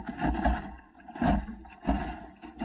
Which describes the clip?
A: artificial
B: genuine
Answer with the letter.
B